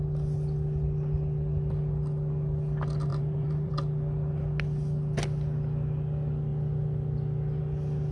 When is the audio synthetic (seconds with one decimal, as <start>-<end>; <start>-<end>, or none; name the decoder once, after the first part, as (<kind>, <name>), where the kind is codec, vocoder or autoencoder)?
3.1-3.7 (vocoder, BigVGAN v2)

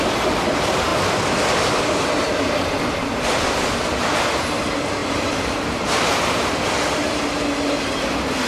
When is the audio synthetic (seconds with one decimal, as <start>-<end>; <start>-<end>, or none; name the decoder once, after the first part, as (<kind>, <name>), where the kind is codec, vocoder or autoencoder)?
5.0-6.7 (vocoder, BigVGAN v2)

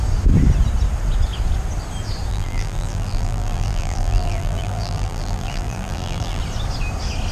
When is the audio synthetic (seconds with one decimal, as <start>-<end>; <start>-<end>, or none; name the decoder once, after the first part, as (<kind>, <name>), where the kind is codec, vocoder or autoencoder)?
2.3-6.4 (vocoder, BigVGAN v2)

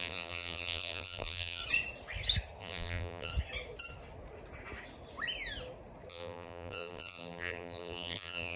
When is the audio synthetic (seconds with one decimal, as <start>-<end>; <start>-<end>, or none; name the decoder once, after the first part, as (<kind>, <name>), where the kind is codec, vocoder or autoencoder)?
0.0-1.6 (vocoder, BigVGAN v2); 2.6-3.3; 6.1-8.6